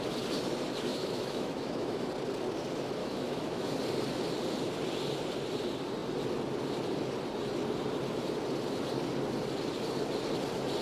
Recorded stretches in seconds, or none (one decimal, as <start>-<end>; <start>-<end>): 0.0-0.9; 2.1-3.0; 3.7-10.8